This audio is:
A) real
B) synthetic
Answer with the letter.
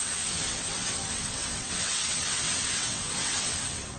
B